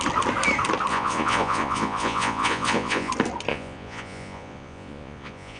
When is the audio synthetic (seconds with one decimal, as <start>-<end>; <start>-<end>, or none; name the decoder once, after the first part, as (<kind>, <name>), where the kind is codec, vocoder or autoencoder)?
0.9-3.1 (vocoder, Vocos); 3.5-5.6